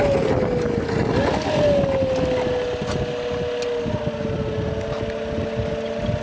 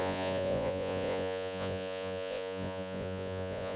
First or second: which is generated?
second